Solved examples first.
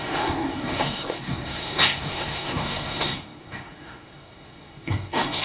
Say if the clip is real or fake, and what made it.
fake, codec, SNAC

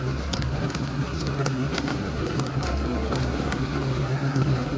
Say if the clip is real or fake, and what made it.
fake, codec, SNAC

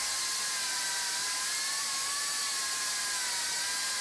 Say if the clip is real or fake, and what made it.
real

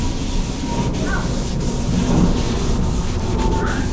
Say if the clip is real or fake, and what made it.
real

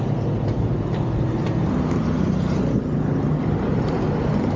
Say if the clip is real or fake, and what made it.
real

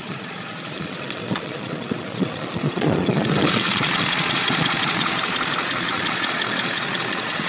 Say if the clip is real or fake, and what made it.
fake, vocoder, Vocos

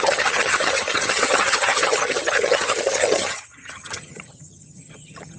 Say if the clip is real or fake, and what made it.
fake, vocoder, HiFi-GAN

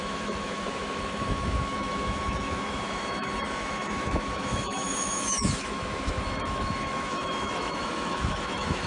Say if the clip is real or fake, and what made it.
fake, autoencoder, DAC-VAE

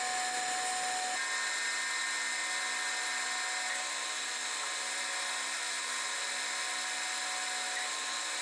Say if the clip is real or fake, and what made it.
real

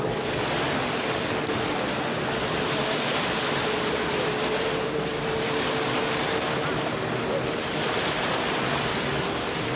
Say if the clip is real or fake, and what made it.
fake, vocoder, BigVGAN v2